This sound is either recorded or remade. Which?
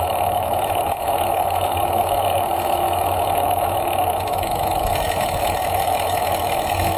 remade